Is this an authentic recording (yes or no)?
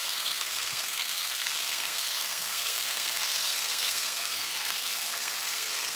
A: no